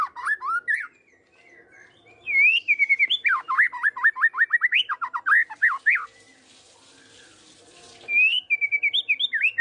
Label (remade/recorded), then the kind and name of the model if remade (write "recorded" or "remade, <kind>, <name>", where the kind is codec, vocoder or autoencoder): recorded